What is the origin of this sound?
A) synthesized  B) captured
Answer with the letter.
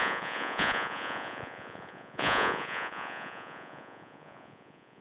A